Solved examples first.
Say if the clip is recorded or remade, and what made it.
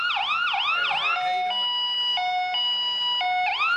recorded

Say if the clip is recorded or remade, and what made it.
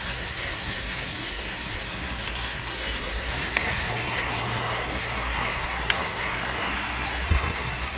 remade, codec, SNAC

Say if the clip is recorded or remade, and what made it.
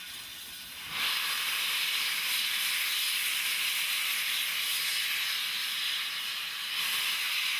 recorded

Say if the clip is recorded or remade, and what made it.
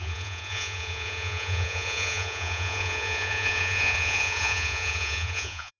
remade, vocoder, Vocos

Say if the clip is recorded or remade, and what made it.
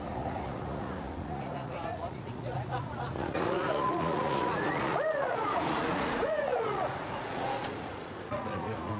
remade, vocoder, Vocos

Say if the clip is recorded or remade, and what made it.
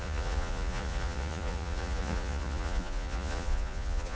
remade, vocoder, Vocos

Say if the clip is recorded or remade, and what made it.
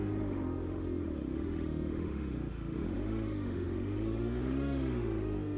remade, autoencoder, DAC-VAE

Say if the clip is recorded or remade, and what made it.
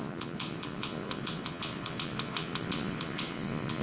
remade, vocoder, Vocos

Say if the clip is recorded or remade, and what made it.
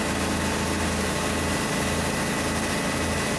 recorded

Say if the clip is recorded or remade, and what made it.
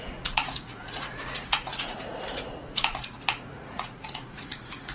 remade, vocoder, Vocos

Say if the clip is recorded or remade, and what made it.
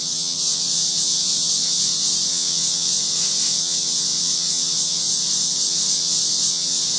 remade, vocoder, WaveNeXt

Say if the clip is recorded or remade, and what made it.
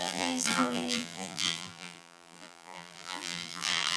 remade, vocoder, BigVGAN v2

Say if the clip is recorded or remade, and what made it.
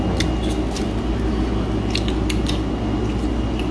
recorded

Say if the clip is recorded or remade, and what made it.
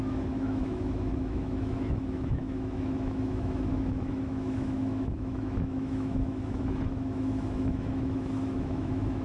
remade, autoencoder, DAC-VAE